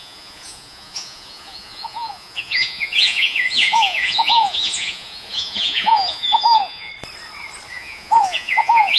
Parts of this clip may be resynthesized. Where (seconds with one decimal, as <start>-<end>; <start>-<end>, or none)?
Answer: 0.0-6.9; 7.7-9.0